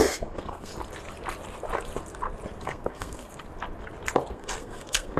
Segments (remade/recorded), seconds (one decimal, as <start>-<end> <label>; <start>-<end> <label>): 0.0-0.7 remade; 0.7-2.6 recorded; 2.6-3.5 remade; 3.5-4.3 recorded; 4.3-5.2 remade